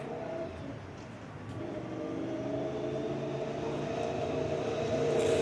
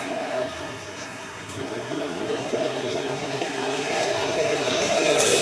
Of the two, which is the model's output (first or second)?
second